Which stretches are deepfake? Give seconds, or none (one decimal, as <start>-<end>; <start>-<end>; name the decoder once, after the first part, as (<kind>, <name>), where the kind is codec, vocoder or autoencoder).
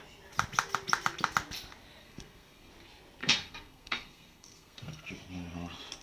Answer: 2.0-2.7 (codec, SNAC); 3.2-5.1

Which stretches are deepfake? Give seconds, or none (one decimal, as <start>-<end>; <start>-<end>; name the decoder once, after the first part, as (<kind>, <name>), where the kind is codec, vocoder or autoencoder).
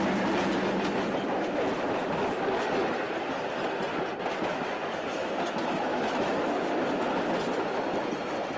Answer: 4.5-5.3 (autoencoder, DAC-VAE); 5.9-6.7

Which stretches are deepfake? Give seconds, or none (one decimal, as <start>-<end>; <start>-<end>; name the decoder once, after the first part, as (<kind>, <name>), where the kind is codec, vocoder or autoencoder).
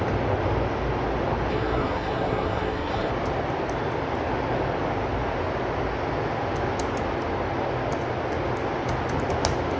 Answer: 1.5-3.1 (codec, SNAC)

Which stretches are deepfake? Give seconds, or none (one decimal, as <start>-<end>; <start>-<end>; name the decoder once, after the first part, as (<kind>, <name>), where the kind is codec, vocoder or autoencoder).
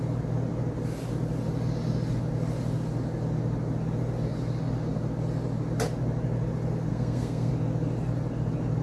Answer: 6.9-7.5 (codec, SNAC)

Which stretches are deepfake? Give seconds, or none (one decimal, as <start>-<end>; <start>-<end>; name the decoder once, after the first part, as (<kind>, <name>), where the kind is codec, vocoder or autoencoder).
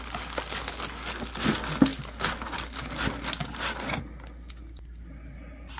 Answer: none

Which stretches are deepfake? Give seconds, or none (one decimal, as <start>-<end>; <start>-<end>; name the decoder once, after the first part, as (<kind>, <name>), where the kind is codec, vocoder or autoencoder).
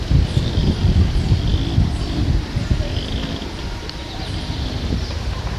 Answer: 0.0-5.6 (vocoder, BigVGAN v2)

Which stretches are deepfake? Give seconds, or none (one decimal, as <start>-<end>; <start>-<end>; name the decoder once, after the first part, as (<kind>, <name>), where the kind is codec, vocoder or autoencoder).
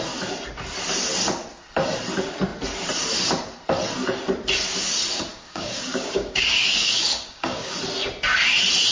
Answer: 5.3-7.8 (codec, DAC)